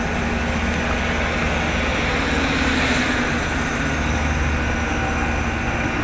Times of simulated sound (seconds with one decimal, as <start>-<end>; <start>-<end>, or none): none